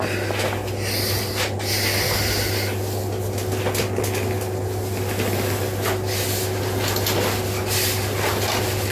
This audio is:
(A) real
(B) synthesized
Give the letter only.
A